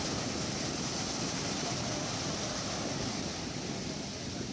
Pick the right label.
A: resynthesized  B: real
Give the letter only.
B